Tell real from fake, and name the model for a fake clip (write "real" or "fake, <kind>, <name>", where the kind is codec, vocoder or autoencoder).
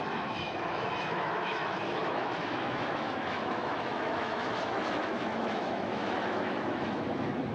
fake, autoencoder, DAC-VAE